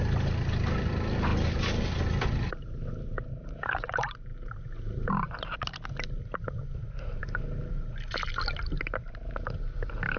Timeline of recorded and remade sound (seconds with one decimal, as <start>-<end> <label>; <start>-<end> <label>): 0.0-10.2 recorded